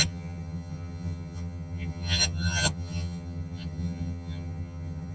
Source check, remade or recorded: remade